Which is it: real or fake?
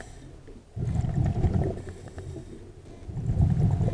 real